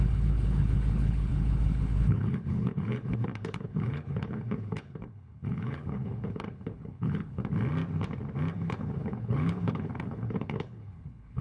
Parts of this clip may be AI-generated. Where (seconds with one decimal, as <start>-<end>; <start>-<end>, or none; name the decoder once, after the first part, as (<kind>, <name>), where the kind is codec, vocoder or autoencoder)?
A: 0.0-7.4 (codec, HILCodec); 8.5-11.4